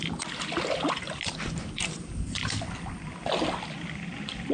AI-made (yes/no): no